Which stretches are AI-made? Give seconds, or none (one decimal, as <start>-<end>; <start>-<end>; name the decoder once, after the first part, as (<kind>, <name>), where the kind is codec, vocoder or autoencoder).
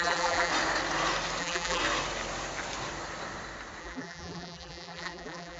0.0-0.5 (vocoder, BigVGAN v2); 1.4-1.8; 3.8-5.6